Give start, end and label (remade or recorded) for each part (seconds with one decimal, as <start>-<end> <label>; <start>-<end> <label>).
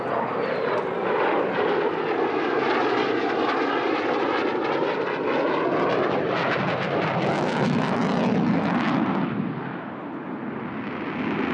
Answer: 0.0-11.5 recorded